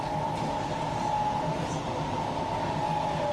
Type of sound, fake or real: real